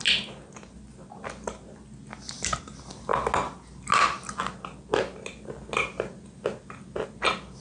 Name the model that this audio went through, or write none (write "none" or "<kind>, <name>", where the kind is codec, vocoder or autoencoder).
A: none